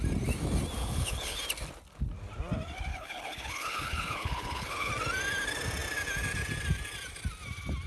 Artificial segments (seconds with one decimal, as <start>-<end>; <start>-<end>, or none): 0.8-1.4; 2.9-4.9